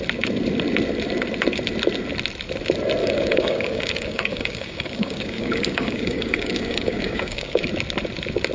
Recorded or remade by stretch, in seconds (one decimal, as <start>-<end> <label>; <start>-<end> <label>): 0.0-3.0 recorded; 3.0-7.7 remade; 7.7-8.5 recorded